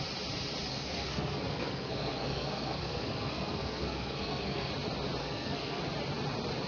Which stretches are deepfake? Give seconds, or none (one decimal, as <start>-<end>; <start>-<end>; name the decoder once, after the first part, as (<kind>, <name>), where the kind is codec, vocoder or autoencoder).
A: 0.7-4.7 (codec, SNAC); 5.2-5.8